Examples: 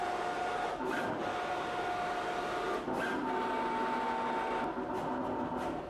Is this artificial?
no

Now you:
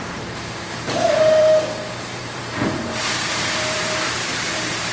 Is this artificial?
yes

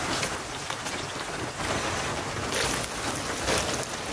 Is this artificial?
no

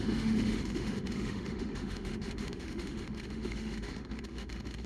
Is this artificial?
yes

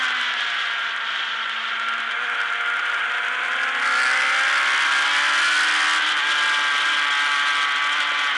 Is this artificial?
no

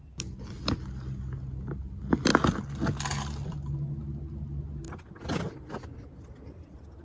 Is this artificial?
no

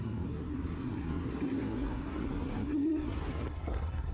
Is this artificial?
yes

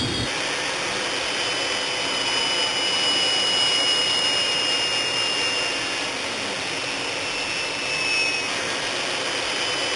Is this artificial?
no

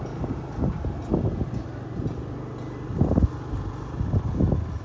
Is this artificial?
no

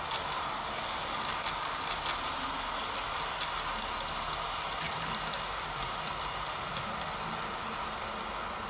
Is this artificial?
no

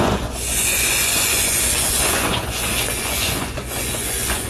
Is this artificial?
yes